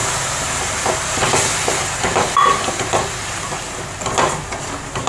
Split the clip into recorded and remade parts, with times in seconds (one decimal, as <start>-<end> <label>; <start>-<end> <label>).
0.0-5.1 recorded